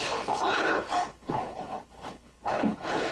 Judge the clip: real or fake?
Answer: fake